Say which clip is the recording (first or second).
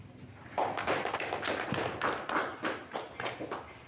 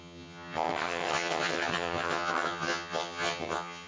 first